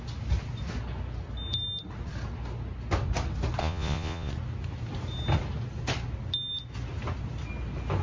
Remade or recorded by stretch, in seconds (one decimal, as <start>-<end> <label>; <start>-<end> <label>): 0.0-3.6 recorded; 3.6-4.3 remade; 4.3-8.0 recorded